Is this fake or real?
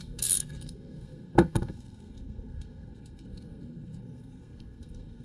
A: fake